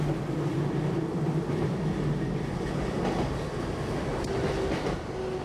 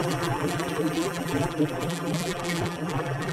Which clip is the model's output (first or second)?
second